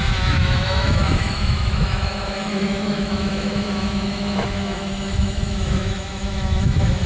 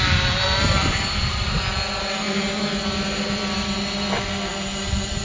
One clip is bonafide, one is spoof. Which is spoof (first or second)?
first